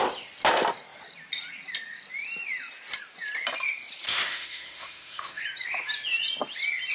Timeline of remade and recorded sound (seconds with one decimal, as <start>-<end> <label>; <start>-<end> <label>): 0.0-4.1 recorded; 4.1-5.4 remade; 5.4-6.9 recorded